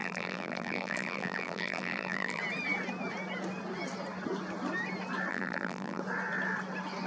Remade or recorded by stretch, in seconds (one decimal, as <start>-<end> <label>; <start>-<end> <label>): 0.0-2.4 remade; 2.4-5.3 recorded; 5.3-6.0 remade; 6.0-7.1 recorded

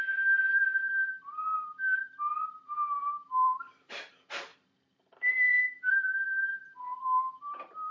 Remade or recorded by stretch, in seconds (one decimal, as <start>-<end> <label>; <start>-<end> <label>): 0.0-7.9 remade

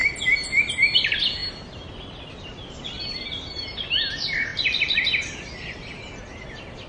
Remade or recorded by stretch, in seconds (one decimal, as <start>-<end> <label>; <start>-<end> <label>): 0.0-6.9 recorded

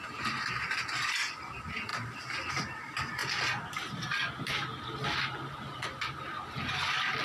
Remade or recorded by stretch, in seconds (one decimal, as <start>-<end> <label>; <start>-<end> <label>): 0.0-7.2 recorded

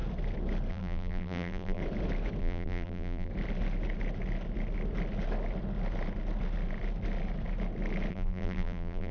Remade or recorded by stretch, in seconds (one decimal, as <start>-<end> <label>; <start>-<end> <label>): 0.0-0.7 recorded; 0.7-1.8 remade; 1.8-2.4 recorded; 2.4-3.3 remade; 3.3-8.1 recorded; 8.1-9.1 remade

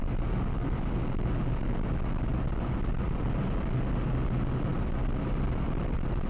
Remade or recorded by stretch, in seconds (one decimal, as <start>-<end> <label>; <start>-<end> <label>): 0.0-6.3 recorded

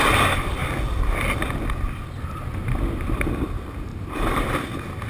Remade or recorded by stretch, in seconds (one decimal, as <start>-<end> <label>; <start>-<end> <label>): 0.0-3.9 recorded; 3.9-4.5 remade; 4.5-5.1 recorded